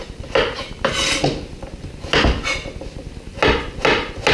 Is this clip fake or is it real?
real